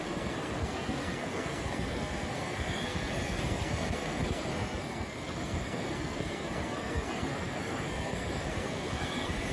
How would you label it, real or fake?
fake